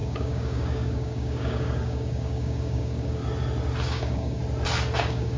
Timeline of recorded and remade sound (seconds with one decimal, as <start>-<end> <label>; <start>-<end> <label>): 0.0-3.2 remade; 3.2-3.8 recorded; 3.8-4.4 remade; 4.4-5.0 recorded; 5.0-5.4 remade